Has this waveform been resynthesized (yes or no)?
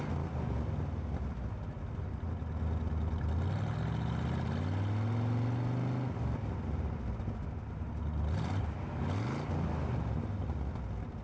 no